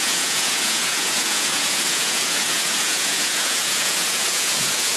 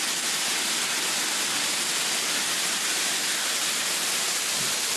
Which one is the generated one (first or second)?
first